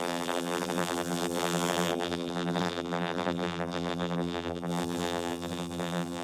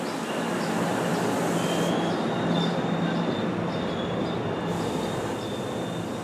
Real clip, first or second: second